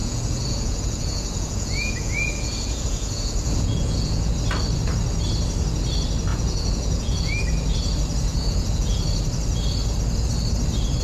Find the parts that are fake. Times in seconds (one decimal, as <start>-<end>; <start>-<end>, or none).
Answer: 0.0-4.3; 6.3-7.4; 8.3-9.0